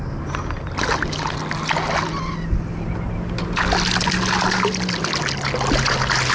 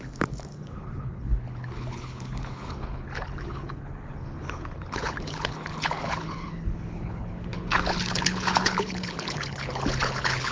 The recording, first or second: first